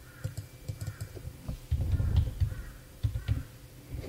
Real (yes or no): yes